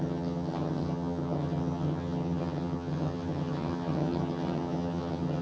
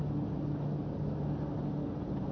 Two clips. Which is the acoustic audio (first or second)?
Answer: second